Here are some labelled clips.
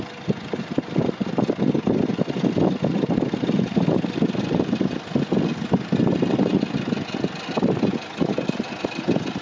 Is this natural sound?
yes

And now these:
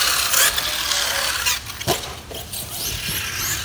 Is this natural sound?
yes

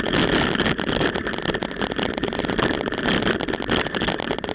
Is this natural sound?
no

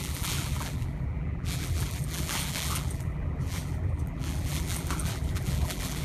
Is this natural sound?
no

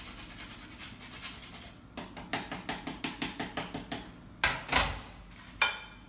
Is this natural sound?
yes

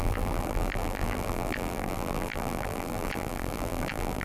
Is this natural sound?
no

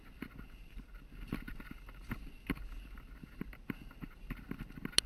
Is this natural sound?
yes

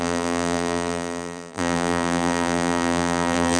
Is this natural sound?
no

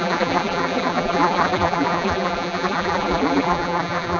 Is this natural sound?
no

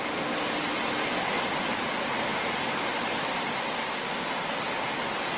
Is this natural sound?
yes